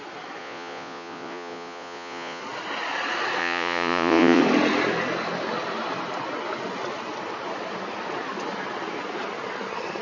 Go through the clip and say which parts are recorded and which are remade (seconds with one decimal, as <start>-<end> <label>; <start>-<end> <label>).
0.0-0.4 recorded; 0.4-2.4 remade; 2.4-3.4 recorded; 3.4-4.4 remade; 4.4-10.0 recorded